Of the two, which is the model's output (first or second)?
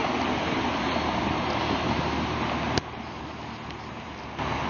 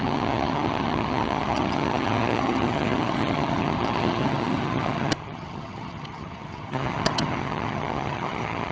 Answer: second